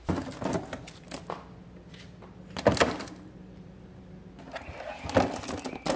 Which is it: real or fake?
real